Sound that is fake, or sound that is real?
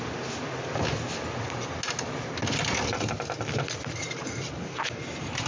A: real